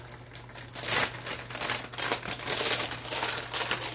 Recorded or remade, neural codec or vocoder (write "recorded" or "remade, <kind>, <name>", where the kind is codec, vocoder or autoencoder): recorded